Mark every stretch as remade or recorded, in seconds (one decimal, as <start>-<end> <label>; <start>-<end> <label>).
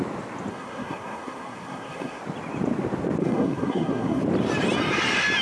0.0-0.5 recorded; 0.5-2.2 remade; 2.2-3.2 recorded; 3.2-4.2 remade; 4.2-5.4 recorded